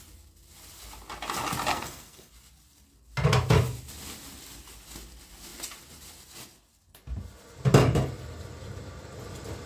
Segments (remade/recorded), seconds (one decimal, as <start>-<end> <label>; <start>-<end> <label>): 0.0-1.7 recorded; 1.7-2.3 remade; 2.3-9.7 recorded